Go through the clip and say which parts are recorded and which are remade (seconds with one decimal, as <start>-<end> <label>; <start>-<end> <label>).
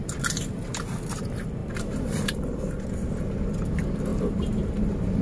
0.0-1.6 recorded; 1.6-2.7 remade; 2.7-4.1 recorded; 4.1-5.2 remade